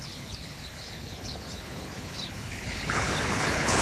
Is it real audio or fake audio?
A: fake